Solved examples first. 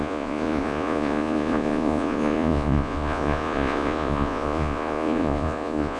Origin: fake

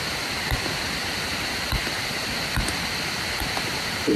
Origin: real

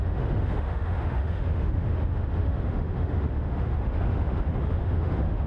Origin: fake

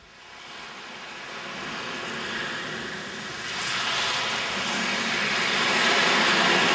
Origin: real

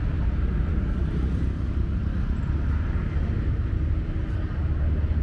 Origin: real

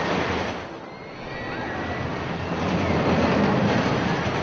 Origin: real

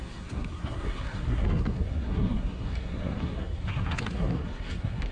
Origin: fake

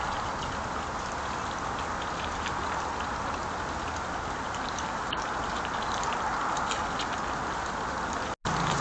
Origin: real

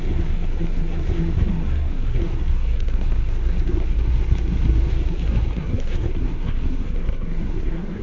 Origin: fake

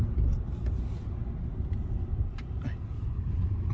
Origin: real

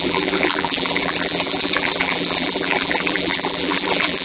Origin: fake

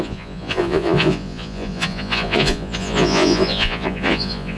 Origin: fake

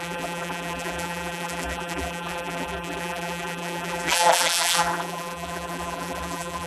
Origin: fake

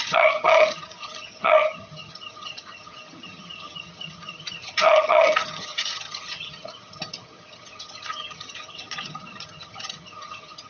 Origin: fake